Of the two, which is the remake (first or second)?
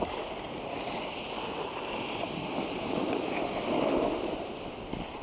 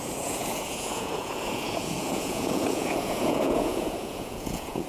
second